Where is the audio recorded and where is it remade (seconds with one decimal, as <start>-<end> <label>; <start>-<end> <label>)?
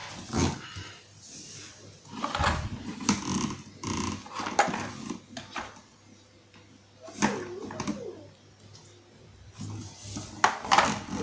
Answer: 0.0-11.2 recorded